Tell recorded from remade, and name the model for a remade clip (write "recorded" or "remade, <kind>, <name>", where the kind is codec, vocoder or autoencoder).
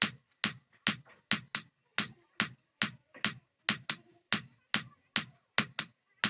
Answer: recorded